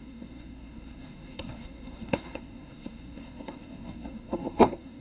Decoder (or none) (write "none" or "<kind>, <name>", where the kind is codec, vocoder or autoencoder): codec, SNAC